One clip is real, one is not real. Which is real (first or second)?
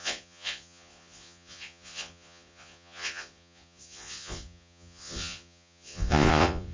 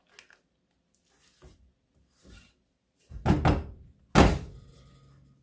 second